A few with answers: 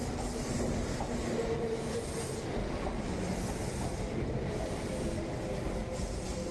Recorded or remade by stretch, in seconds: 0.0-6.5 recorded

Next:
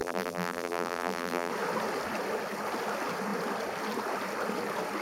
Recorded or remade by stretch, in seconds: 0.0-1.5 remade; 1.5-5.0 recorded

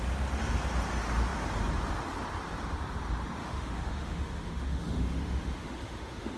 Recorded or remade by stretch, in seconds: 0.0-3.4 recorded; 3.4-6.4 remade

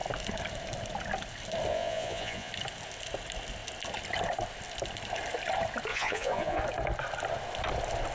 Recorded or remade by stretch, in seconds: 0.0-1.7 recorded; 1.7-2.5 remade; 2.5-5.9 recorded; 5.9-6.6 remade; 6.6-8.1 recorded